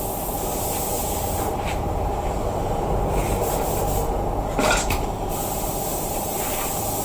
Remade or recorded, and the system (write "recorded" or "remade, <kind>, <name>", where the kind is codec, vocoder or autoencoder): recorded